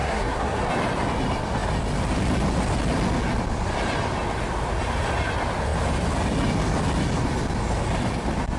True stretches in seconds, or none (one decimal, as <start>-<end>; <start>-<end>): 0.6-8.6